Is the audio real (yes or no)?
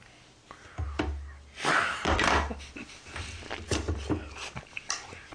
yes